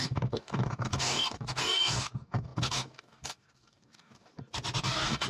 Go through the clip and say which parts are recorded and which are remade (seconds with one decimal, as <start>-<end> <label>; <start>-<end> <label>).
0.0-4.3 remade; 4.3-4.8 recorded; 4.8-5.3 remade